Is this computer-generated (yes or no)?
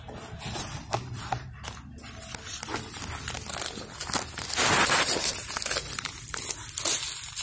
no